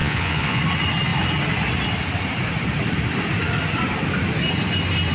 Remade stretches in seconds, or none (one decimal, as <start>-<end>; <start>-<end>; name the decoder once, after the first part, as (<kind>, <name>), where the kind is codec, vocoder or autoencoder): 0.0-0.6 (vocoder, Vocos)